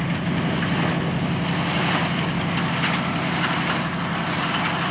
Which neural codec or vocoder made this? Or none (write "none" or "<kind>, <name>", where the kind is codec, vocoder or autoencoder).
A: none